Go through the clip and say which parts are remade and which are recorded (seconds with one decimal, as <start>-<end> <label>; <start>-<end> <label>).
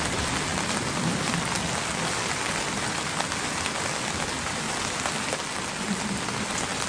0.0-6.9 recorded